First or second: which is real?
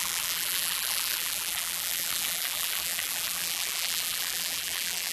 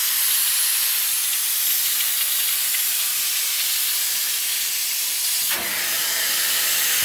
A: second